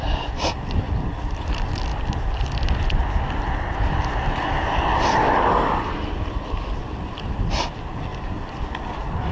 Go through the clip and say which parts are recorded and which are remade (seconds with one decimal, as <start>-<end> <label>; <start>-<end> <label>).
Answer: 0.0-9.3 recorded